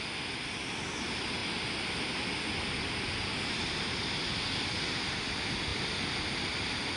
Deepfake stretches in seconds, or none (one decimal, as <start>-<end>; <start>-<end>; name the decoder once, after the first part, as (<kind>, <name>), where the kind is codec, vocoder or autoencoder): none